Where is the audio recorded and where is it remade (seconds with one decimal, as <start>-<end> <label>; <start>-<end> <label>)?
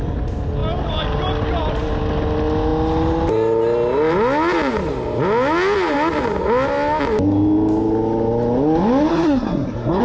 0.0-9.1 recorded; 9.1-10.0 remade